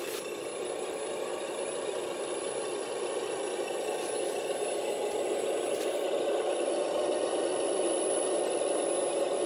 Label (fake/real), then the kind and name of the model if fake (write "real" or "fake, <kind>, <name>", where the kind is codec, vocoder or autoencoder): real